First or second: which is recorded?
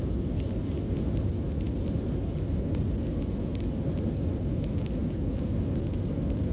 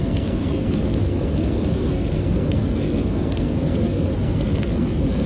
first